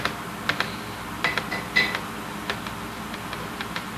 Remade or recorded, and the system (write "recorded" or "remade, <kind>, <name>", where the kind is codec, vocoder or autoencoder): recorded